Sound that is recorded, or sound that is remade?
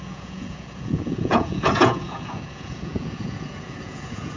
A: remade